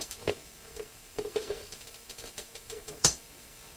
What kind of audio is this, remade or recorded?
remade